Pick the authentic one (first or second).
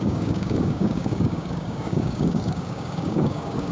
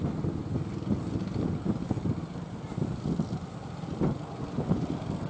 second